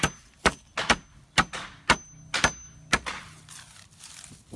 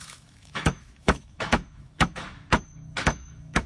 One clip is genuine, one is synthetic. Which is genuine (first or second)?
first